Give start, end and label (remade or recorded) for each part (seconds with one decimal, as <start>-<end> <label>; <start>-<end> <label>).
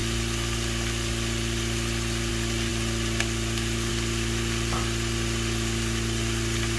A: 0.0-6.8 recorded